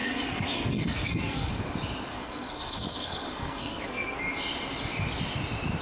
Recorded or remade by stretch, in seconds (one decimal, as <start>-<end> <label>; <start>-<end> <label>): 0.0-1.5 remade; 1.5-2.1 recorded; 2.1-4.2 remade; 4.2-5.8 recorded